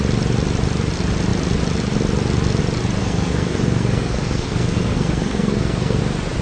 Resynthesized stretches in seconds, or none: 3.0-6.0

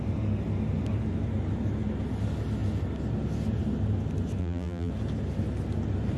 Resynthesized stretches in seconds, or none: 4.4-4.9